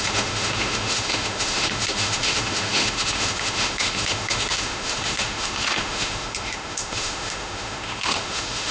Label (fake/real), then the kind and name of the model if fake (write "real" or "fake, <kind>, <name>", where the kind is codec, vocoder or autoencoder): fake, autoencoder, DAC-VAE